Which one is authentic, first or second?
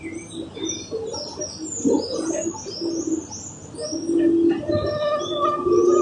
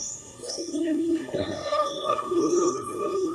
first